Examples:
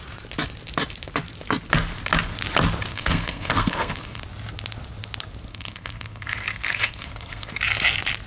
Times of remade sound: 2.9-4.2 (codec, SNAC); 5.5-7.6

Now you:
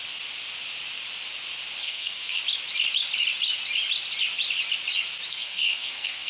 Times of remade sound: 1.8-2.4 (codec, SNAC); 5.3-6.3

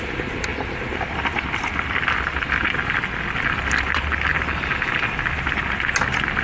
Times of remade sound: none

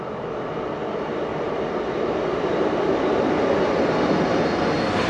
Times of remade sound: none

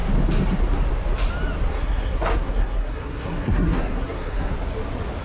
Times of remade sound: 1.7-4.5 (codec, SNAC)